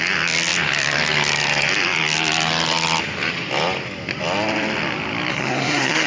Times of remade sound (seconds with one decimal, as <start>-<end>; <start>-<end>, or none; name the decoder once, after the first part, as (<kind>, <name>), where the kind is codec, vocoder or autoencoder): 5.3-6.1 (codec, SNAC)